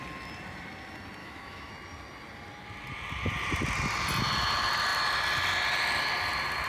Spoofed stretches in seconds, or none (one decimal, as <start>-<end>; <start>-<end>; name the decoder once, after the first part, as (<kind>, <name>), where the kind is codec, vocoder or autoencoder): 1.2-1.7 (autoencoder, DAC-VAE)